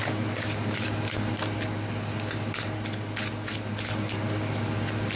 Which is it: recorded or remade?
recorded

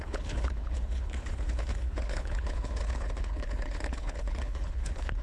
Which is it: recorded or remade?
remade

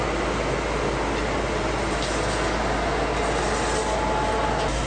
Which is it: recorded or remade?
recorded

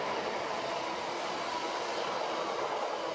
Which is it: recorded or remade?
recorded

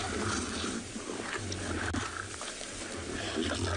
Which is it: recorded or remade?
recorded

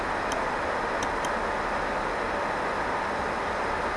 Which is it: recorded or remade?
recorded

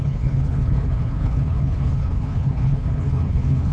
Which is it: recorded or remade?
remade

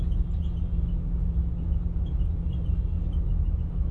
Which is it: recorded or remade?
recorded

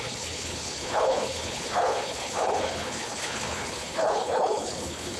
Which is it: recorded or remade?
remade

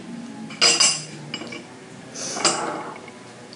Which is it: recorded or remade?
recorded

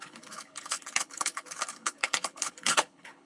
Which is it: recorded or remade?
remade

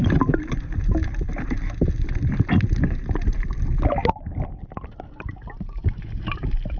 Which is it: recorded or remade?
recorded